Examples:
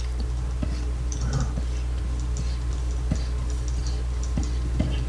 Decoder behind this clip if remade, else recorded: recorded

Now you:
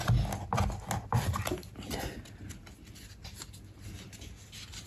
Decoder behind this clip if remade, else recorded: recorded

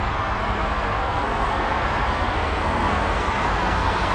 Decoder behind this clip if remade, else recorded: remade, codec, SNAC